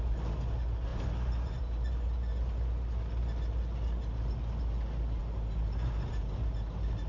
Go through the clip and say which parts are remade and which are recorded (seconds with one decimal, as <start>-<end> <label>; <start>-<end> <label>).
0.0-7.1 recorded